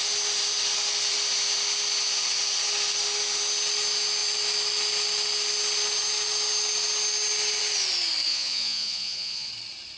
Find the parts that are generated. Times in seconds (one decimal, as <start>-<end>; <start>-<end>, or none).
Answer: 8.3-9.5